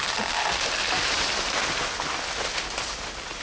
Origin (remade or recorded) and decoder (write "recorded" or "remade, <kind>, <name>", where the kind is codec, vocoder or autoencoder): recorded